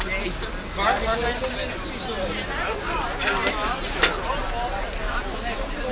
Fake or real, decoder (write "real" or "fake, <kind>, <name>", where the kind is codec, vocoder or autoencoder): real